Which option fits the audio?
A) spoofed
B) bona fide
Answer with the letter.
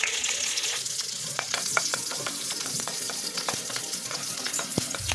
A